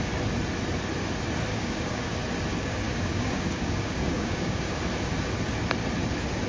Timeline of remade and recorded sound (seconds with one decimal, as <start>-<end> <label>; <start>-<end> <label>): 0.0-1.5 recorded; 1.5-2.1 remade; 2.1-2.5 recorded; 2.5-4.8 remade; 4.8-6.5 recorded